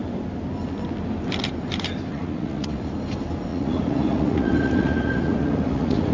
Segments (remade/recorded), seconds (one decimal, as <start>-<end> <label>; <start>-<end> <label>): 0.0-2.1 recorded; 2.1-2.9 remade; 2.9-3.5 recorded; 3.5-6.1 remade